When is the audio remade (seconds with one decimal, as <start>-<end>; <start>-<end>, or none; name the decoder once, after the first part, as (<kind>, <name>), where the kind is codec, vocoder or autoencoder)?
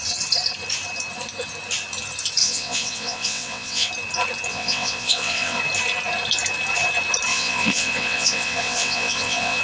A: 2.4-3.9 (vocoder, WaveNeXt); 4.5-5.6; 7.3-9.6